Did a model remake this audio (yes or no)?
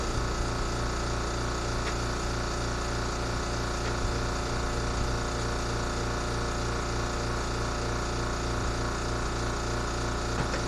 no